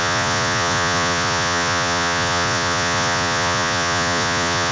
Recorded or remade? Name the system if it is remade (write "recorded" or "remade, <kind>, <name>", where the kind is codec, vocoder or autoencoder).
remade, vocoder, Vocos